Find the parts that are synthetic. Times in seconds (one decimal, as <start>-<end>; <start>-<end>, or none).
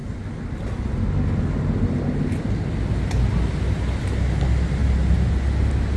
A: none